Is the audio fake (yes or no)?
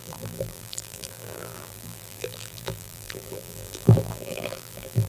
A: yes